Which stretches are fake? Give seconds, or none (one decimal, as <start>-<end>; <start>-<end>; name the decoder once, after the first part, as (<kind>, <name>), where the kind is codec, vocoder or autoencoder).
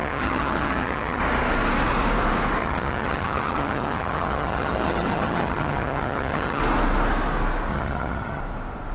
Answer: 0.0-1.2 (vocoder, HiFi-GAN); 2.6-6.6; 7.7-8.4